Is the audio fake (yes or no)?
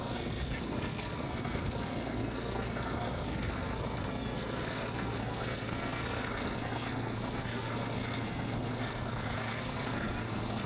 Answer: yes